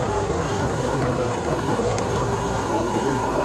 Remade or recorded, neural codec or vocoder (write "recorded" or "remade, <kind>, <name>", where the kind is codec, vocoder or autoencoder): remade, codec, SNAC